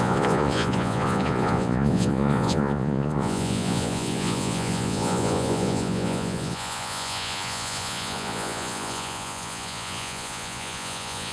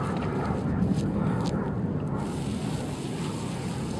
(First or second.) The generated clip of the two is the first